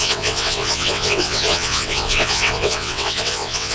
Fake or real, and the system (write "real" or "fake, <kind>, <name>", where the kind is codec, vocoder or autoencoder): fake, vocoder, WaveNeXt